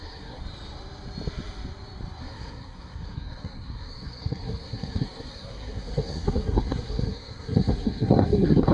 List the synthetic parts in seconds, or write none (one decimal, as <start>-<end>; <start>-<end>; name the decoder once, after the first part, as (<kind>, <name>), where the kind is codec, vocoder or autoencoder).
0.0-0.4 (codec, SNAC); 2.2-8.7